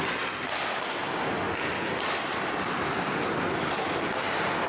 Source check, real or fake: real